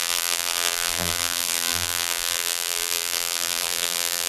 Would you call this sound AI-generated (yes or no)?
yes